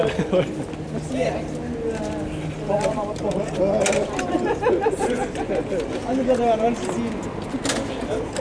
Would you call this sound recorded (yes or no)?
yes